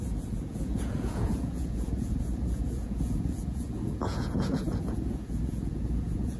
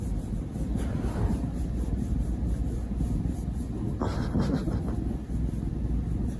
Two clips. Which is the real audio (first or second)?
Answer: second